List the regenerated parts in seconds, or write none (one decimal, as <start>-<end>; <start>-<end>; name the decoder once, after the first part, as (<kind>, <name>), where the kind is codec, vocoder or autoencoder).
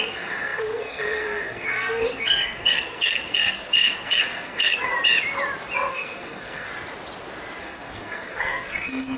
0.0-4.9 (codec, SNAC); 5.9-6.7; 7.6-9.2